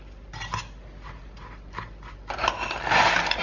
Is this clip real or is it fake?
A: real